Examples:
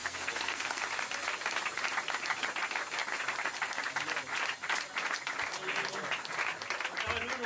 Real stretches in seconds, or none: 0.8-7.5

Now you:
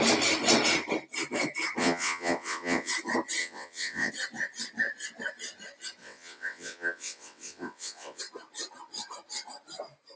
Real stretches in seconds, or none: 0.0-1.8; 2.9-3.4; 4.1-6.0; 8.2-10.2